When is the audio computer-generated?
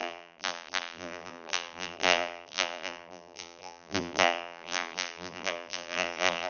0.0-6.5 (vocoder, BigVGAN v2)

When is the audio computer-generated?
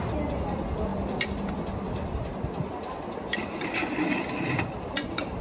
none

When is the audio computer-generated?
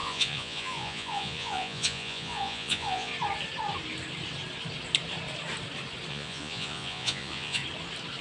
0.0-3.1 (vocoder, Vocos); 6.1-7.6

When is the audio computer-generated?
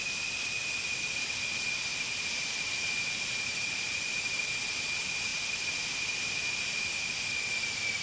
1.9-4.4 (vocoder, BigVGAN v2)